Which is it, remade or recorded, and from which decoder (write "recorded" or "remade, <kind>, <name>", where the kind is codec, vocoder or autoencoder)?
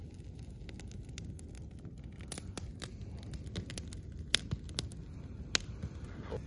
recorded